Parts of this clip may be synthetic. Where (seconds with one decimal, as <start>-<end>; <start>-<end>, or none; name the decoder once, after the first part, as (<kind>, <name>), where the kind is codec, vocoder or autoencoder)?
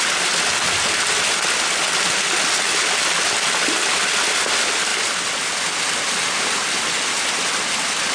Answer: none